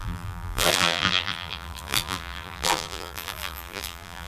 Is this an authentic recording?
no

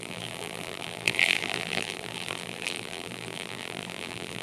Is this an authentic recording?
no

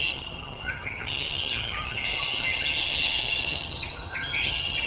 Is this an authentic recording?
no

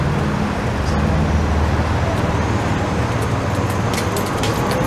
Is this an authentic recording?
yes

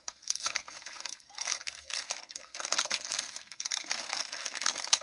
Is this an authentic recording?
no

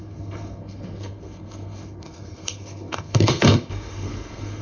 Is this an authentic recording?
no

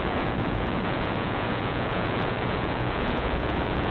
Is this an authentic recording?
no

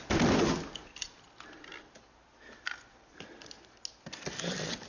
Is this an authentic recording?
yes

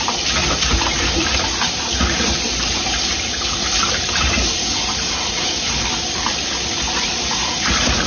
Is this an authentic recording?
no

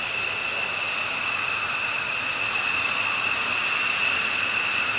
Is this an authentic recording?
yes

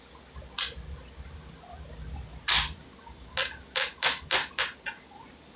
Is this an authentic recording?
yes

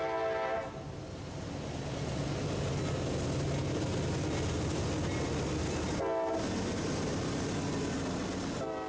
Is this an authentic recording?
yes